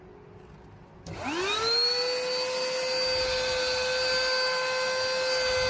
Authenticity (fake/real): real